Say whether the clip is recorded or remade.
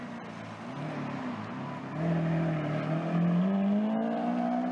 recorded